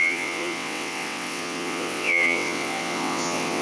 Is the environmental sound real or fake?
fake